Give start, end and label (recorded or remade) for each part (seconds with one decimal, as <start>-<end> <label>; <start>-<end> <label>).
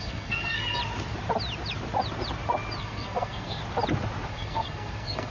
0.0-0.8 remade; 0.8-2.8 recorded; 2.8-3.6 remade; 3.6-4.3 recorded; 4.3-5.3 remade